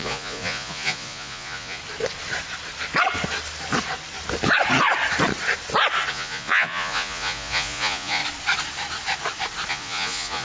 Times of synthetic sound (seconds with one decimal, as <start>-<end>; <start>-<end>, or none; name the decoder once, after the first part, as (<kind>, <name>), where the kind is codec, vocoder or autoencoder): 0.0-1.8 (vocoder, Vocos); 6.1-8.2; 9.7-10.4